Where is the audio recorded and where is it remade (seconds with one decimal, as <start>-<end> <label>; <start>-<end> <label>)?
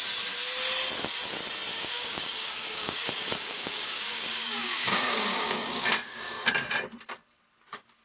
0.0-1.7 recorded; 1.7-6.5 remade; 6.5-8.0 recorded